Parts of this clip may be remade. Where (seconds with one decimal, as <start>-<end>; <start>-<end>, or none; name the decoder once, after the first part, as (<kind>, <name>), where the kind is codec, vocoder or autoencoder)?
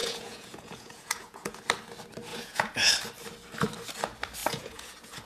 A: 0.0-1.6 (vocoder, Vocos); 2.3-2.9; 4.4-5.3